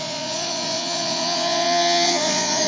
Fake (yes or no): yes